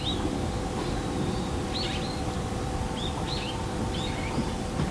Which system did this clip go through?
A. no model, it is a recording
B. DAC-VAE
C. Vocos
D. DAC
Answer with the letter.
A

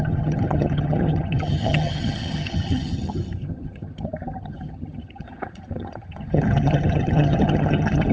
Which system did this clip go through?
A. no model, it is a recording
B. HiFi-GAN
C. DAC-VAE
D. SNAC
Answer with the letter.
B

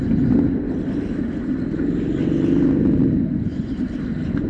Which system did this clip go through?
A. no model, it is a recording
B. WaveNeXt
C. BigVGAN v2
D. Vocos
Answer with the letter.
A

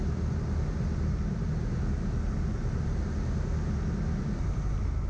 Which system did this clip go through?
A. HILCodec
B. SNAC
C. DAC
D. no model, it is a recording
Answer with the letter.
D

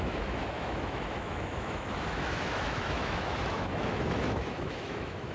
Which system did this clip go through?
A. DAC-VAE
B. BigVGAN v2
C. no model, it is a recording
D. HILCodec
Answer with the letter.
A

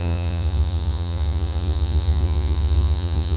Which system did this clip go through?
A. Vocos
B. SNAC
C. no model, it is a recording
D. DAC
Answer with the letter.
A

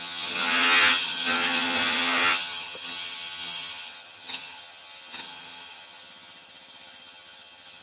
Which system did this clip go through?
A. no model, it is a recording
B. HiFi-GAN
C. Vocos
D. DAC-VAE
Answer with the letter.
B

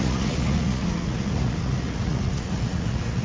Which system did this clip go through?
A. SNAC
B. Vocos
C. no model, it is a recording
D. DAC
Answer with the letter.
B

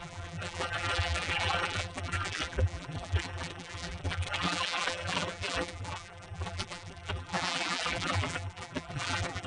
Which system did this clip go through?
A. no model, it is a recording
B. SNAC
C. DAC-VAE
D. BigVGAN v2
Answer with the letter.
D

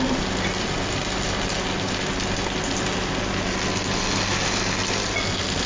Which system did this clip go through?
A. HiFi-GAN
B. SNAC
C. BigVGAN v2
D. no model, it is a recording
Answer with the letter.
D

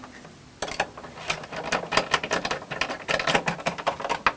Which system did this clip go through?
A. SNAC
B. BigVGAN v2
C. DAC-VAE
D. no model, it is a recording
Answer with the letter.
D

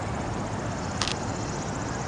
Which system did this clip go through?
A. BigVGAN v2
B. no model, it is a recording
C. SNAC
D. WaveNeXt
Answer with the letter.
B